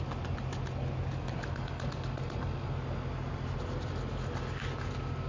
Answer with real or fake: fake